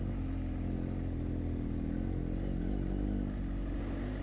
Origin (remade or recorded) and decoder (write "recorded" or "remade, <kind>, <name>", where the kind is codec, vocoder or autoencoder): recorded